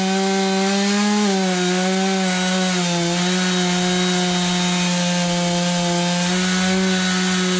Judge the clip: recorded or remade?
recorded